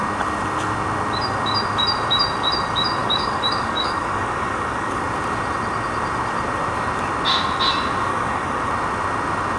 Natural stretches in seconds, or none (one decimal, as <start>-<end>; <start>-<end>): 0.0-3.0; 5.0-8.1; 8.7-9.6